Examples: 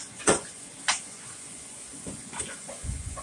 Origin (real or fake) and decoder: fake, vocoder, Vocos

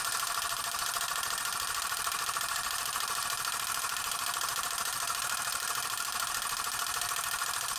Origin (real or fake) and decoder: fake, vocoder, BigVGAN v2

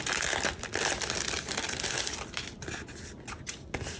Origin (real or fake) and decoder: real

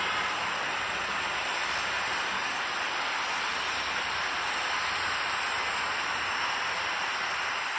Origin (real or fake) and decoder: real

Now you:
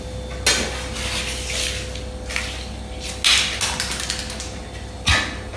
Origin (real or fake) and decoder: real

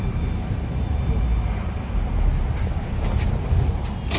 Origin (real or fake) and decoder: real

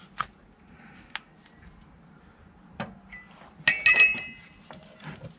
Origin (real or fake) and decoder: real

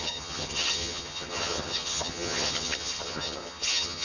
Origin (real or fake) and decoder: fake, vocoder, HiFi-GAN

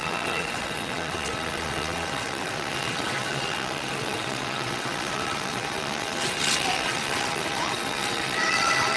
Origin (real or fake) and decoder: fake, vocoder, WaveNeXt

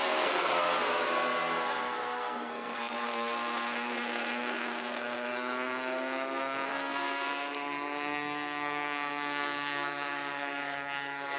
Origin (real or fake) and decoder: fake, codec, SNAC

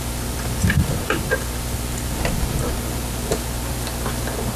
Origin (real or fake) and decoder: real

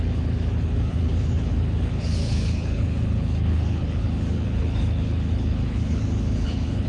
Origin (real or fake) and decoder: fake, codec, HILCodec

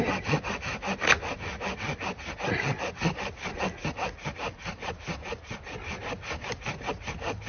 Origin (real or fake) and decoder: real